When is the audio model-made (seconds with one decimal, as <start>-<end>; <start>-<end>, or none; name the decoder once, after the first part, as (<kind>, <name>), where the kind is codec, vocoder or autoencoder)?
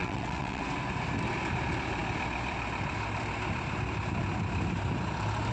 0.0-0.6 (vocoder, WaveNeXt)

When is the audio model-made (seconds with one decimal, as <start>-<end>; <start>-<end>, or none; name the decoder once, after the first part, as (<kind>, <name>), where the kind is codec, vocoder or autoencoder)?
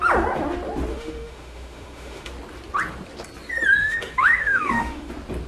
0.9-2.3 (autoencoder, DAC-VAE); 3.8-5.1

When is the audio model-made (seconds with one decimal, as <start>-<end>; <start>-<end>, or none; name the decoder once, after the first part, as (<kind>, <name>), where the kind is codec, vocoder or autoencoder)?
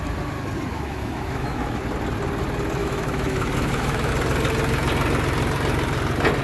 0.7-1.8 (autoencoder, DAC-VAE); 2.8-4.1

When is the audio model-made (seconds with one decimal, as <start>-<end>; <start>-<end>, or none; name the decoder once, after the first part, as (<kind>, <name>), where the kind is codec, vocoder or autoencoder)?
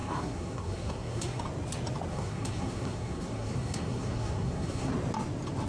0.0-1.4 (codec, SNAC); 2.1-4.9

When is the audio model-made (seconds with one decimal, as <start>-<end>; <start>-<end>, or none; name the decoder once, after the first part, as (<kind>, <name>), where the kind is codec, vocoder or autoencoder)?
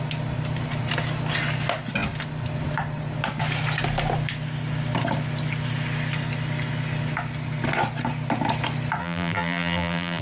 9.0-10.2 (vocoder, BigVGAN v2)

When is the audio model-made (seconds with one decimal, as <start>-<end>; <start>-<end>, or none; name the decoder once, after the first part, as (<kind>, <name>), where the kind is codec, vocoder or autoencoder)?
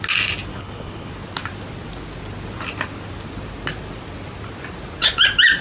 0.5-1.1 (codec, HILCodec)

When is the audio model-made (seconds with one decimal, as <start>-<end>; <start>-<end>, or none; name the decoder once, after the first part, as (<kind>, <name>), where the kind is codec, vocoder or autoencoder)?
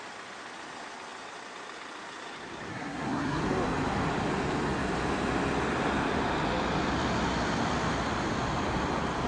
2.7-3.4 (codec, SNAC)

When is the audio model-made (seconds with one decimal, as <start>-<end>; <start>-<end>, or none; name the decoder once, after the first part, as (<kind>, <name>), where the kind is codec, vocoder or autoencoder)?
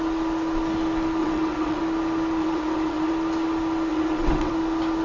1.2-1.8 (vocoder, WaveNeXt); 2.4-3.1; 3.9-4.5